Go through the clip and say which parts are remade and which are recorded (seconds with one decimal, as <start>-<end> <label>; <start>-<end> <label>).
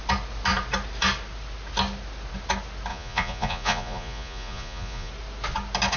0.0-2.9 recorded; 2.9-5.1 remade; 5.1-6.0 recorded